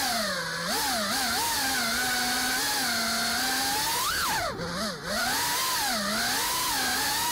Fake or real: real